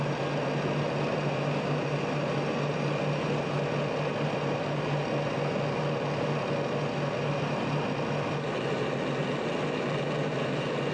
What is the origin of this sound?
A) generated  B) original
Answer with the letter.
B